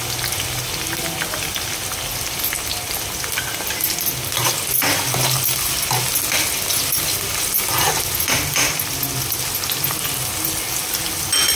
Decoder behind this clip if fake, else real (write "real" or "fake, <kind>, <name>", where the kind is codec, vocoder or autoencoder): real